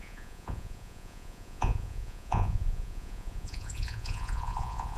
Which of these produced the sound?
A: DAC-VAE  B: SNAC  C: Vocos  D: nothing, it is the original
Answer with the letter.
C